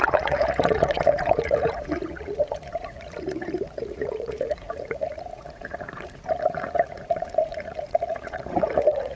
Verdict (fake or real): fake